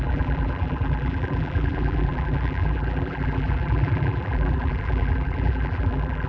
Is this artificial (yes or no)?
yes